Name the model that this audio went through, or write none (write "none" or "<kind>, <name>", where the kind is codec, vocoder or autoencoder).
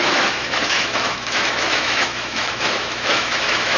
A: autoencoder, DAC-VAE